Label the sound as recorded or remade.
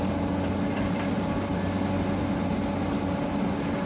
recorded